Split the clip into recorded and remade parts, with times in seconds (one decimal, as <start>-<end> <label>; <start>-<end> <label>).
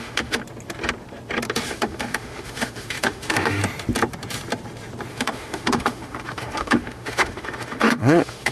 0.0-0.4 remade; 0.4-1.7 recorded; 1.7-3.6 remade; 3.6-5.1 recorded; 5.1-8.5 remade